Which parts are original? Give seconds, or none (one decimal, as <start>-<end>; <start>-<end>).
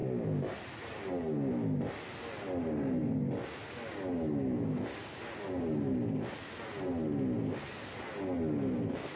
0.0-9.2